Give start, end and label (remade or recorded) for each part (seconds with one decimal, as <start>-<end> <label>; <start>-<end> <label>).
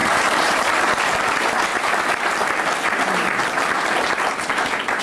0.0-0.8 remade; 0.8-5.0 recorded